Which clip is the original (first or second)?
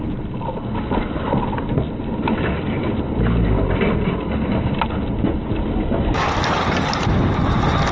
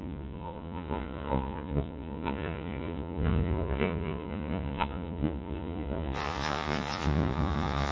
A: first